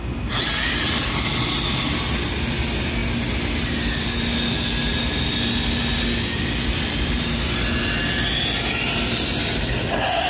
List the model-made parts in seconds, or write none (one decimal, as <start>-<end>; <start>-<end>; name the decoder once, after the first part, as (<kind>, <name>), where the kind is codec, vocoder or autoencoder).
none